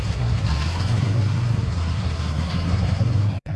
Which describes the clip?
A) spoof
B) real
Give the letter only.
A